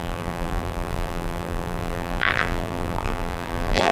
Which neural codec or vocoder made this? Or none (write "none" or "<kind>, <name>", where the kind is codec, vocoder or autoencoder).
vocoder, BigVGAN v2